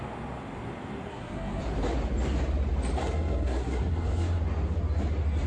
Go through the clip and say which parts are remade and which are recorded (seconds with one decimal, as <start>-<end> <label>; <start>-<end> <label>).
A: 0.0-1.1 recorded; 1.1-1.6 remade; 1.6-3.0 recorded; 3.0-4.4 remade; 4.4-5.5 recorded